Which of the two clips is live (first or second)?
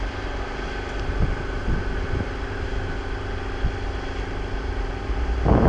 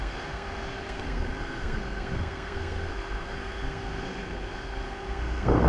first